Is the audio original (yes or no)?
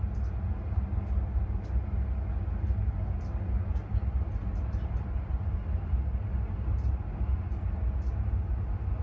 yes